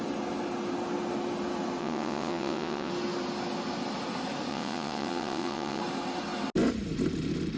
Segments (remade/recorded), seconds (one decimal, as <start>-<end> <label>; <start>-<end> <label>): 0.0-1.8 recorded; 1.8-2.9 remade; 2.9-4.5 recorded; 4.5-5.8 remade; 5.8-7.6 recorded